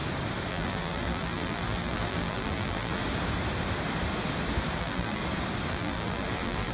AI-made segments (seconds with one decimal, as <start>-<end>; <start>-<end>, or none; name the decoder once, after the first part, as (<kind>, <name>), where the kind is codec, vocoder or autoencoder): 0.5-3.0 (vocoder, BigVGAN v2); 4.8-5.2; 5.7-6.7